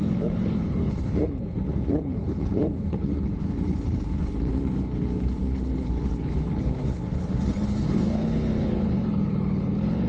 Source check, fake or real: fake